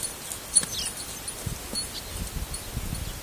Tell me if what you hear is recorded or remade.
recorded